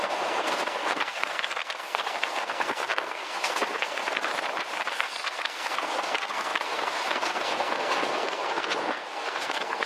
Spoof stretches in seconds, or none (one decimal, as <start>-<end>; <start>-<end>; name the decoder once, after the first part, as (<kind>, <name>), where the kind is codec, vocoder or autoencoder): 0.0-4.3 (codec, SNAC); 4.9-9.9